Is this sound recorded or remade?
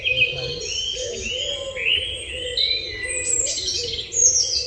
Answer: recorded